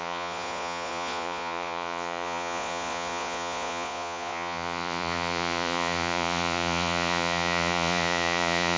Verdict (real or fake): fake